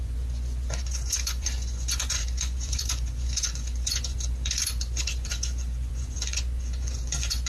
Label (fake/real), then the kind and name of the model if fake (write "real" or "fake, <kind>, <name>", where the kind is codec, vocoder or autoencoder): fake, vocoder, Vocos